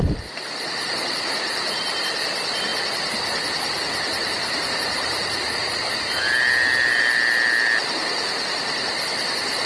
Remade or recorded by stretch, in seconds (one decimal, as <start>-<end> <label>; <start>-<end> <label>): 0.0-2.7 recorded; 2.7-7.0 remade; 7.0-9.7 recorded

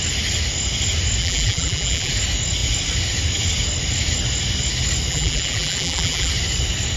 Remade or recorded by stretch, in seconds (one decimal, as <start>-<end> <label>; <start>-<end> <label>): 0.0-1.2 recorded; 1.2-2.1 remade; 2.1-5.1 recorded; 5.1-6.3 remade; 6.3-7.0 recorded